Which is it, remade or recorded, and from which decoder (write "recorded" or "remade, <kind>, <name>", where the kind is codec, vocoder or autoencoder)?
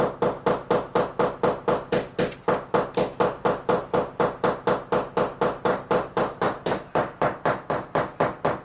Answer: recorded